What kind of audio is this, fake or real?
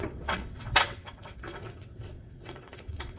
fake